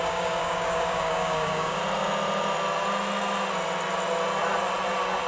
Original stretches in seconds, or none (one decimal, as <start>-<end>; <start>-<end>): 1.8-5.3